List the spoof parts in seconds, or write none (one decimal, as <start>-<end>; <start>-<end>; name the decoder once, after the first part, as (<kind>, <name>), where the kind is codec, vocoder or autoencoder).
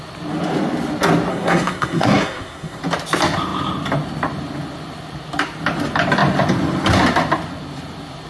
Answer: 1.3-2.8 (codec, SNAC)